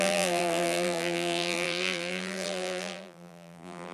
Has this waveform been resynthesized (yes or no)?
yes